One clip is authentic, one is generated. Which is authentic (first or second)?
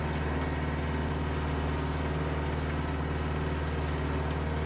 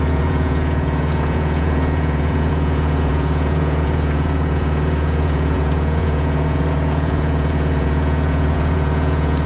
first